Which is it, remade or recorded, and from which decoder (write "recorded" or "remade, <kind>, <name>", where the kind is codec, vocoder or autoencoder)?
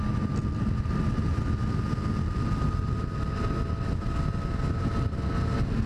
recorded